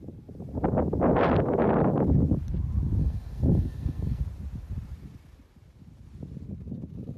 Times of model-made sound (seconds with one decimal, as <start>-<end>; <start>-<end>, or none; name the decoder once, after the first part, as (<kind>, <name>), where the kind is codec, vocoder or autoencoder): 3.0-4.2 (codec, SNAC)